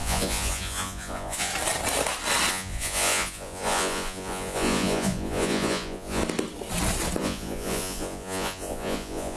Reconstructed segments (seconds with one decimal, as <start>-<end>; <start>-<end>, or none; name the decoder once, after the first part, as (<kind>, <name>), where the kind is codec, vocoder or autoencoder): 0.0-1.5 (vocoder, Vocos); 2.5-6.2; 7.2-9.4